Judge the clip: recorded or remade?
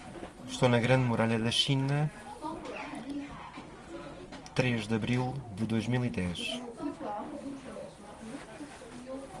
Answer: recorded